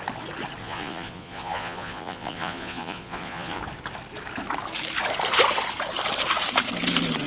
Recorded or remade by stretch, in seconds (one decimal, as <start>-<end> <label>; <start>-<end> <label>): 0.0-0.6 recorded; 0.6-3.6 remade; 3.6-7.3 recorded